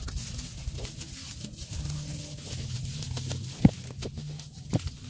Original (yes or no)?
yes